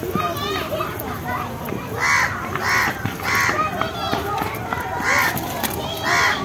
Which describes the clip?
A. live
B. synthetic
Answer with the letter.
A